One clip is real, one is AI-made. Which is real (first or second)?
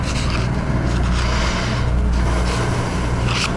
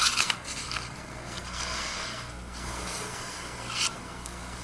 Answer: first